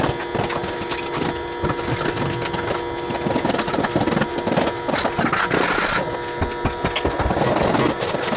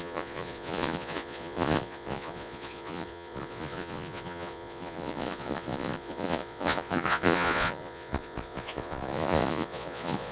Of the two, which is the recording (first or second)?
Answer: first